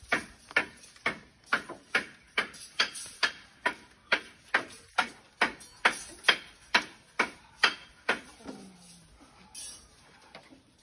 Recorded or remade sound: recorded